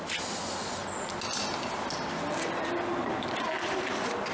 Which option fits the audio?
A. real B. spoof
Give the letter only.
A